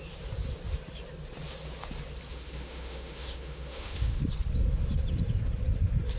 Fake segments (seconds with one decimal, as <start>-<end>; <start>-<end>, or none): 2.3-4.2

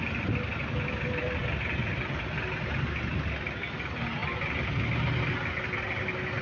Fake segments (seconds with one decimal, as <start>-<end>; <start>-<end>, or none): none

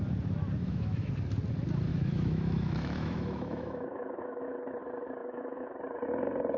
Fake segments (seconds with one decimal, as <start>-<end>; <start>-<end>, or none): 0.6-1.1; 1.9-4.8; 5.2-5.7